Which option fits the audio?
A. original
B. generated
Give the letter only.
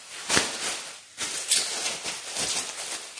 A